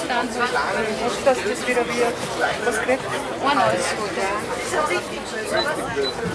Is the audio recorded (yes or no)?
yes